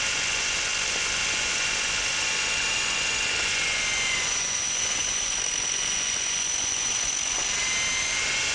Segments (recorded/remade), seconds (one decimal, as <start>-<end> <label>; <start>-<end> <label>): 0.0-7.4 remade; 7.4-8.0 recorded; 8.0-8.5 remade